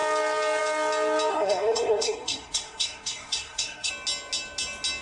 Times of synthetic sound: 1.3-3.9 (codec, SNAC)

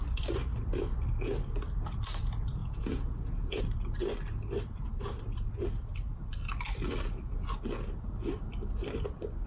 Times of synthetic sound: 2.6-3.6 (vocoder, Vocos)

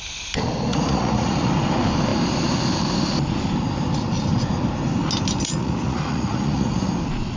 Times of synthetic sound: 0.7-1.5 (vocoder, Vocos); 5.6-6.9

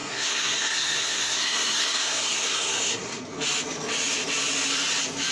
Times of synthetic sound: 0.0-3.2 (codec, SNAC)